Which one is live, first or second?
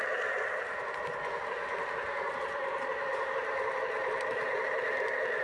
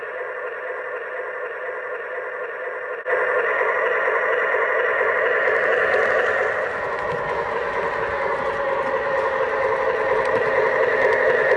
second